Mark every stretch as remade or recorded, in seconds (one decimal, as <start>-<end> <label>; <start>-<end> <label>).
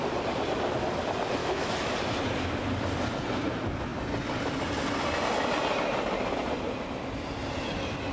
0.0-1.4 recorded; 1.4-1.9 remade; 1.9-8.1 recorded